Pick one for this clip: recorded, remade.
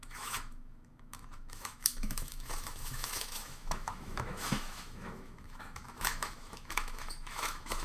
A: remade